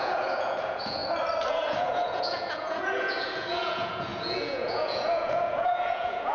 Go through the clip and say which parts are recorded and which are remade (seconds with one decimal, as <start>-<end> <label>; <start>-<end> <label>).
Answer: 0.0-1.0 remade; 1.0-1.5 recorded; 1.5-6.3 remade